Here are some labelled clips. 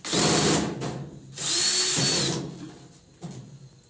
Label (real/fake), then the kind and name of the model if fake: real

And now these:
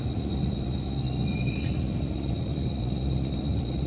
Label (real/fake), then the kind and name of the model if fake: fake, vocoder, Vocos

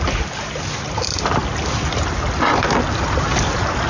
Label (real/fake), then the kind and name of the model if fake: real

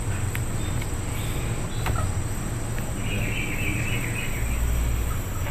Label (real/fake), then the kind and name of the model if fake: real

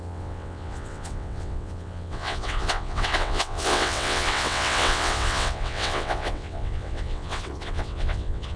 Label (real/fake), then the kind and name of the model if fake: fake, vocoder, WaveNeXt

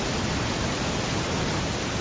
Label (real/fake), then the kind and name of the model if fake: real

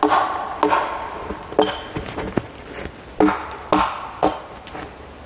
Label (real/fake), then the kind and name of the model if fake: real